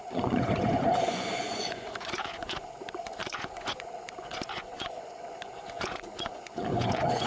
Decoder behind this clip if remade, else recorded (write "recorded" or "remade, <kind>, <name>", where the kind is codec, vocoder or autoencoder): remade, vocoder, Vocos